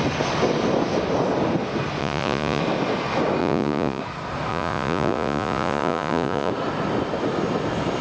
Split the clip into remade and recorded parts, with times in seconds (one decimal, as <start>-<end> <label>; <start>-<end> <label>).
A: 0.0-2.0 recorded; 2.0-2.6 remade; 2.6-3.4 recorded; 3.4-4.0 remade; 4.0-4.5 recorded; 4.5-6.5 remade; 6.5-8.0 recorded